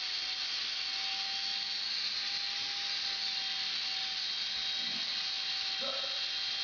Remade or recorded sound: recorded